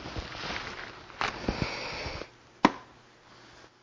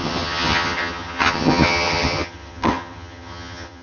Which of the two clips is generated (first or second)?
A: second